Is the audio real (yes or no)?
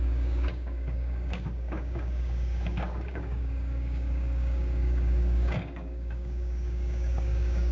no